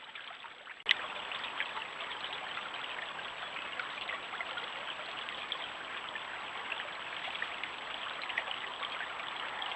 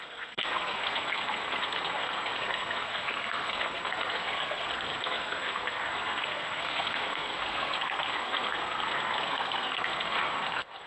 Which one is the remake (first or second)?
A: second